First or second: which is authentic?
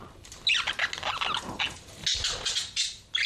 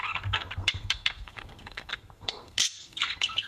first